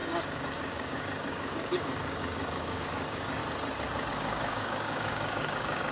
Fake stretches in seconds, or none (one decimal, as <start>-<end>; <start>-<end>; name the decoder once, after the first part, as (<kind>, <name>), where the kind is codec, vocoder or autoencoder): 0.0-3.4 (codec, DAC); 4.1-5.9